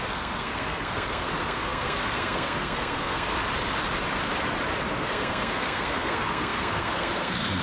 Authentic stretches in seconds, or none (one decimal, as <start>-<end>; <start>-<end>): 3.3-4.9